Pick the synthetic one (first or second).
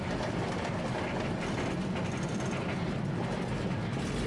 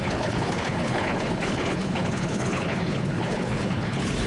second